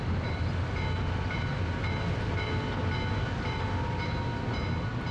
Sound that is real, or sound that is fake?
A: real